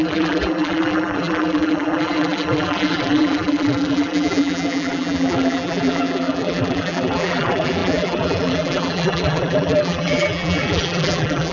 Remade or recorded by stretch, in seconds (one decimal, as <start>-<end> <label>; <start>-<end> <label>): 0.0-11.5 remade